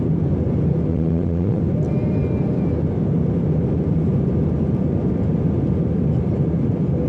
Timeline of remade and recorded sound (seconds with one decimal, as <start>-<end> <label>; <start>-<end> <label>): 0.0-0.9 recorded; 0.9-1.6 remade; 1.6-7.1 recorded